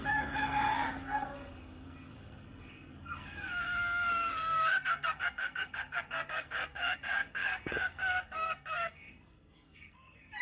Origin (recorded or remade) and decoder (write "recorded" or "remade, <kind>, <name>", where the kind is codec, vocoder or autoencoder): remade, codec, SNAC